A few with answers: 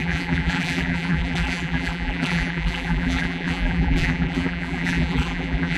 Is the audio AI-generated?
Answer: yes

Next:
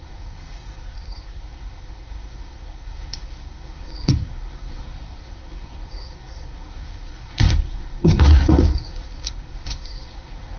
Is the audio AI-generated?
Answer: yes